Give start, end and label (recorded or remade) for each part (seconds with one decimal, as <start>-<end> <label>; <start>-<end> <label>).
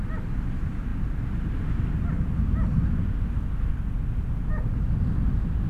0.0-5.7 recorded